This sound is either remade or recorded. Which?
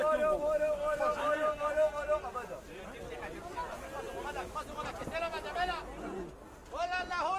recorded